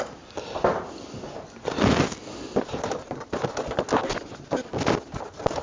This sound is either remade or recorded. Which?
recorded